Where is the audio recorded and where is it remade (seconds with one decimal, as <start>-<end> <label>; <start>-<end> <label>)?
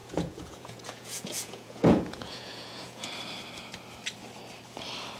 0.0-3.1 remade; 3.1-5.2 recorded